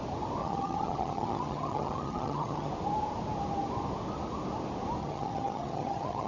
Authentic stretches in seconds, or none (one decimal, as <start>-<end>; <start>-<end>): 0.0-0.4; 2.7-5.0